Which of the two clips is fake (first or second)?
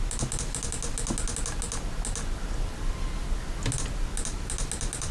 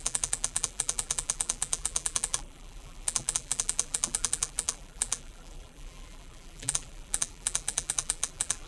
second